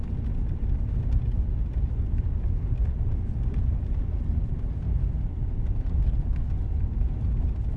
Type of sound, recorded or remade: recorded